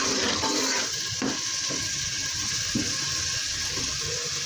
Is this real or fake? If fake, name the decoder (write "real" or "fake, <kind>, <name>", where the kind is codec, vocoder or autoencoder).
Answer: real